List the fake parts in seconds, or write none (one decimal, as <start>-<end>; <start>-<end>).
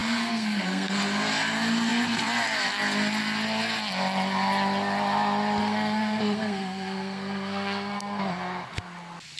0.0-1.0; 5.6-8.2